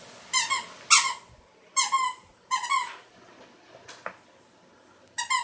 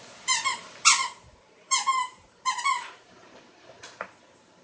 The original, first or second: first